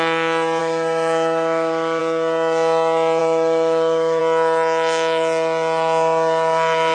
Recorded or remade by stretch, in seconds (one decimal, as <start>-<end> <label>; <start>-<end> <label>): 0.0-0.6 recorded; 0.6-2.0 remade; 2.0-3.2 recorded; 3.2-4.2 remade; 4.2-6.9 recorded